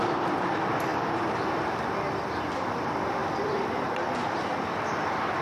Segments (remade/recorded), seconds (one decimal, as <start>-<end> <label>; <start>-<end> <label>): 0.0-5.4 remade